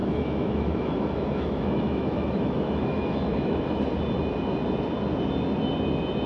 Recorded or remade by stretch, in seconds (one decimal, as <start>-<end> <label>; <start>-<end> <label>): 0.0-3.8 remade; 3.8-6.3 recorded